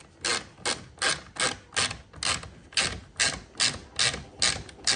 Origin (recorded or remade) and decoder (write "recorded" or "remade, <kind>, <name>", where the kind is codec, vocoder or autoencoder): recorded